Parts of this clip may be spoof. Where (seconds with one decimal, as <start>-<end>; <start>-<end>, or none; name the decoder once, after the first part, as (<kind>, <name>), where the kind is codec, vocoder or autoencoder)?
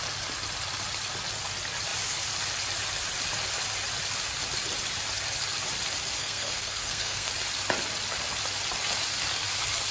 6.2-7.3 (codec, SNAC)